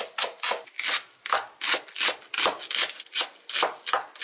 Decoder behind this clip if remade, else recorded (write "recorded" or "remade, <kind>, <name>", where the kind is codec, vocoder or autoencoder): recorded